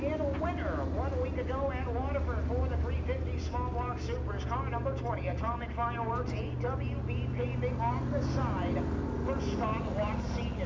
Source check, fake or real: real